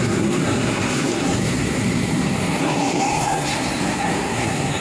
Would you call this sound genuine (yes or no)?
no